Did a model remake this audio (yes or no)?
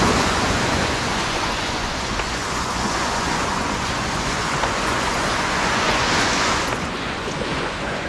yes